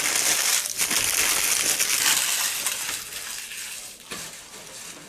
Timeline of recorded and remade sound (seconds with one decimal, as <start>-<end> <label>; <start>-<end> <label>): 0.0-3.8 recorded; 3.8-4.5 remade; 4.5-5.1 recorded